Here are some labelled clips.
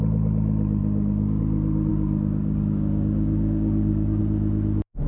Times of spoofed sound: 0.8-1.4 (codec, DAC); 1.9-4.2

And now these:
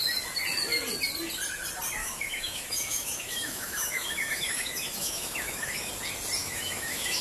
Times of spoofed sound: 2.0-5.9 (autoencoder, DAC-VAE); 6.4-7.2

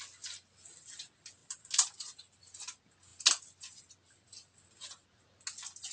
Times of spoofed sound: none

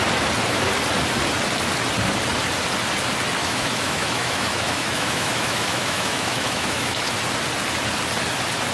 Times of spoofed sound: 3.4-7.1 (autoencoder, DAC-VAE)

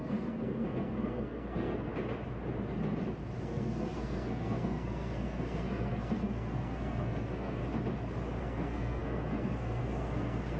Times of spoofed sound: 0.0-1.9 (codec, SNAC); 3.4-7.6; 8.4-10.6

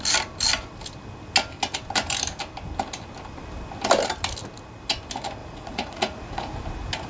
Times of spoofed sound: 5.4-6.5 (vocoder, Vocos)

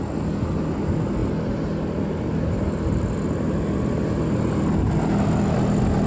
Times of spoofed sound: none

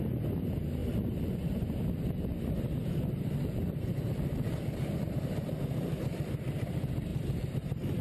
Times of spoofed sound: 0.8-5.6 (vocoder, BigVGAN v2); 7.1-8.0